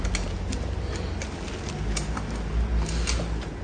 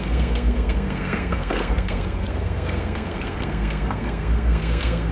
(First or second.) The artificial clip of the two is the second